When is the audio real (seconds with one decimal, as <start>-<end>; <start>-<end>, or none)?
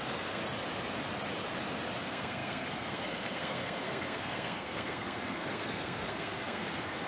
0.4-2.0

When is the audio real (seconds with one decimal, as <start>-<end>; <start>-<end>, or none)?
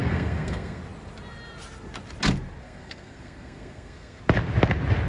0.8-2.6; 4.2-5.1